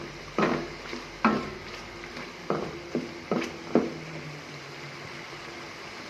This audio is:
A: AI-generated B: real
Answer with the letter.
A